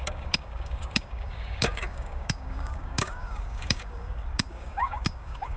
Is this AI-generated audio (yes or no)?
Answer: yes